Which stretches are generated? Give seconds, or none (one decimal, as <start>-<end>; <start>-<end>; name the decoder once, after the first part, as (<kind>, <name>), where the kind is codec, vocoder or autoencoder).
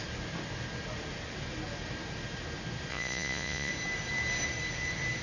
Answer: 2.9-3.7 (vocoder, Vocos)